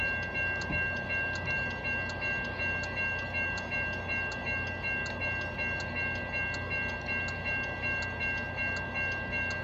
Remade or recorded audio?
recorded